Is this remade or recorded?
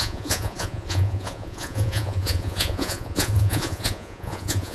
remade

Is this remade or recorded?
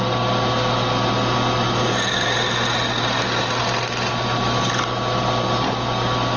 recorded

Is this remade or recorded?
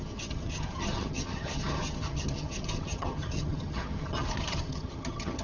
remade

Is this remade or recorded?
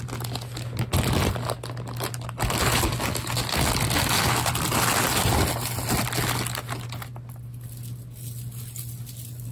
recorded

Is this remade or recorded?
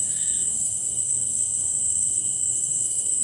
remade